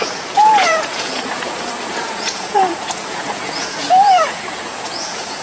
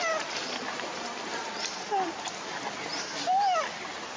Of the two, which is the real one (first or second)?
second